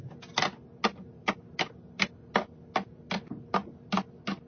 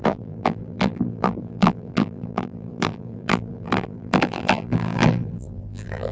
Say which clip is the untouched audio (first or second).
first